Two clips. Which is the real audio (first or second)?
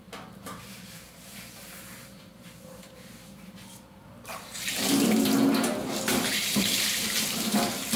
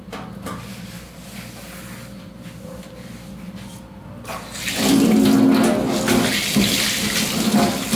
second